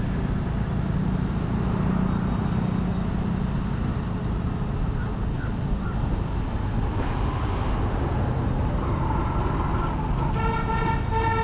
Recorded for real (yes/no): yes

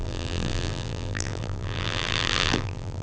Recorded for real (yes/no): no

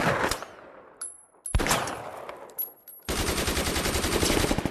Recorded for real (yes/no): yes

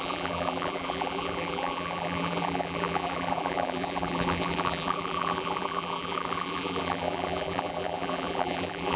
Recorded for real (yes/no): no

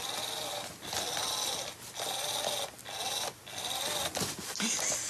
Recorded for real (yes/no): yes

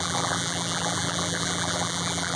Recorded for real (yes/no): no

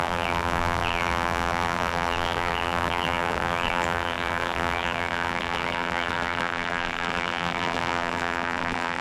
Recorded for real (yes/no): no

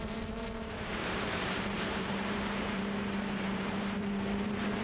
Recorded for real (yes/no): no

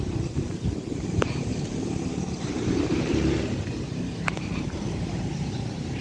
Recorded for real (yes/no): no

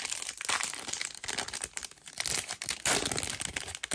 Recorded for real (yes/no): yes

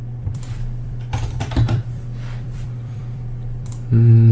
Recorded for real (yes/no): no